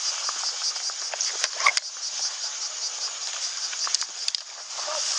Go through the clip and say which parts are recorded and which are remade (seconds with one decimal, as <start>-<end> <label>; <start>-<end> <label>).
0.0-5.2 recorded